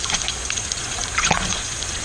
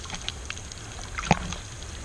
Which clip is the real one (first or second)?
second